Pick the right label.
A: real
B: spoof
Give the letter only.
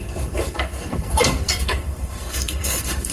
B